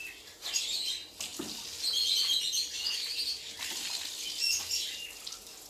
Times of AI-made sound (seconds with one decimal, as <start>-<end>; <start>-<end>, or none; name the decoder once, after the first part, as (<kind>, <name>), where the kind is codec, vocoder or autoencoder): none